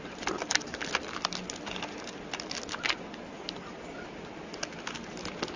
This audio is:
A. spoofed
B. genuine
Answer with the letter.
B